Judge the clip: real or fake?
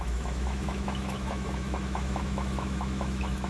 fake